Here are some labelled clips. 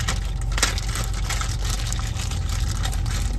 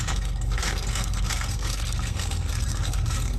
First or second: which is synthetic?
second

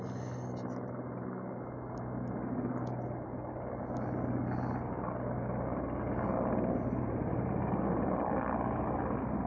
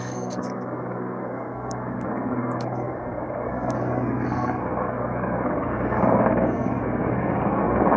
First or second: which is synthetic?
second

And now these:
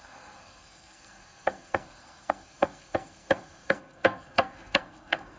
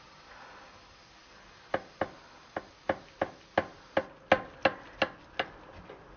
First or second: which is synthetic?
first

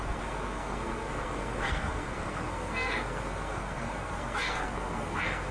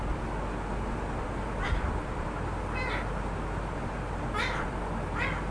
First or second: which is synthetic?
first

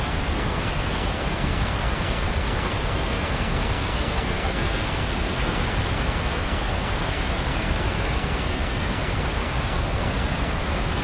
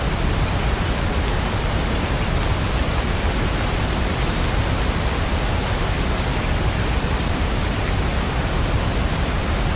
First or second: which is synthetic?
first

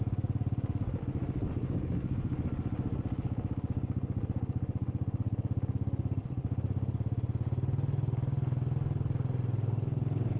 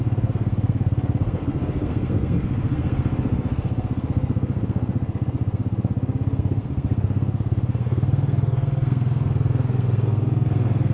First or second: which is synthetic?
second